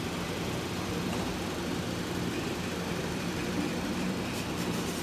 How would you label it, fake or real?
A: fake